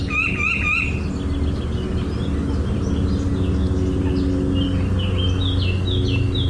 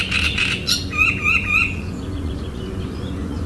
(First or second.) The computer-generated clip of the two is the second